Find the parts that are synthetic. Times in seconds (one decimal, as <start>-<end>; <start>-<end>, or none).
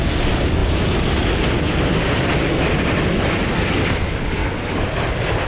none